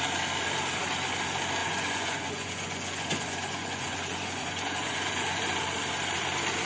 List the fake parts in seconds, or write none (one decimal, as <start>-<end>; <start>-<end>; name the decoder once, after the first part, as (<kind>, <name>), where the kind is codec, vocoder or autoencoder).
1.6-5.4 (vocoder, Vocos)

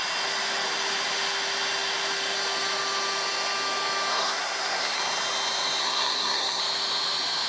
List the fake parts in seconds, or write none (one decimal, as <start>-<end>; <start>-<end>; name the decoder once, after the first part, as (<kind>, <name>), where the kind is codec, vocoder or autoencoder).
4.1-5.0 (codec, SNAC); 5.8-6.6